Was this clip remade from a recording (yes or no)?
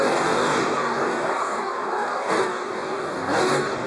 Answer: yes